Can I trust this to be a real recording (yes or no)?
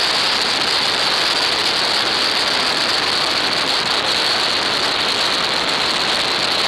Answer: yes